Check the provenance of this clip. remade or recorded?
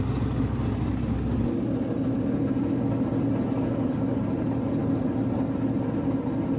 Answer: recorded